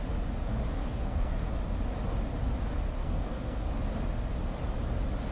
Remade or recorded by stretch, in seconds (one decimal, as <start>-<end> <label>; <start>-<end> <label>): 0.0-0.8 recorded; 0.8-1.5 remade; 1.5-3.0 recorded; 3.0-3.7 remade; 3.7-5.3 recorded